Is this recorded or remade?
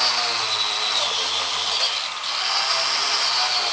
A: recorded